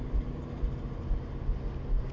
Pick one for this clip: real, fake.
real